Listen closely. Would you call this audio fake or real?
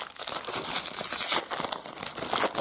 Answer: real